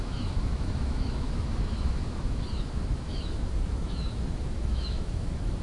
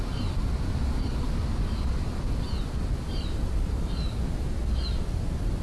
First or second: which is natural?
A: second